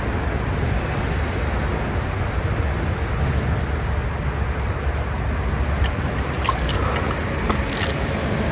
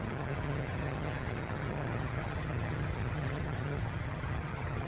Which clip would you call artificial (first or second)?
second